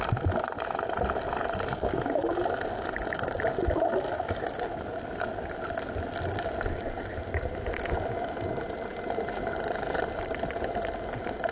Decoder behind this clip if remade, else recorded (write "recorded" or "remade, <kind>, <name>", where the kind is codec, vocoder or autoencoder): recorded